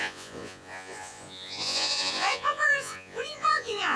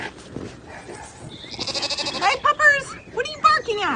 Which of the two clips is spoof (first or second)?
first